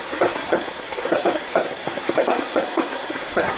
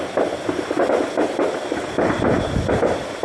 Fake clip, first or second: first